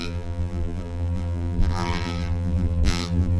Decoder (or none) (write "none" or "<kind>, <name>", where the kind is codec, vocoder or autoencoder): vocoder, BigVGAN v2